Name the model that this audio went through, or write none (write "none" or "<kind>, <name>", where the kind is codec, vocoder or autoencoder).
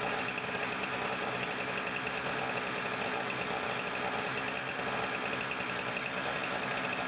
none